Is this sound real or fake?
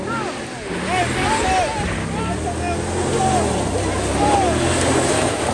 real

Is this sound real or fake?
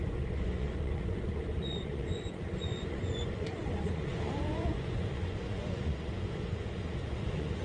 fake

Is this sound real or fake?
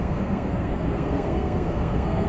fake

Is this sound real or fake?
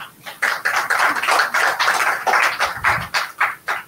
real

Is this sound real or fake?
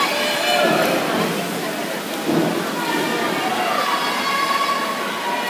real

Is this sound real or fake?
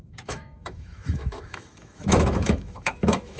fake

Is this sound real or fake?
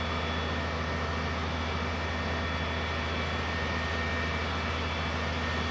real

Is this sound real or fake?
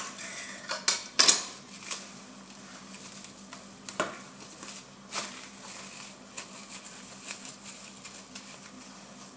real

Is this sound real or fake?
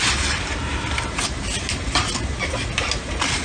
real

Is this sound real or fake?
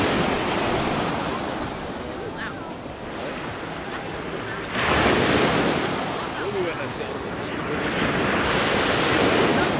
real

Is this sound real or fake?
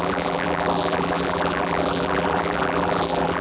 fake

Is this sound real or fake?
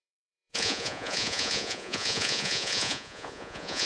fake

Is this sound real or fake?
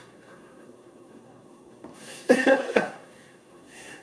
fake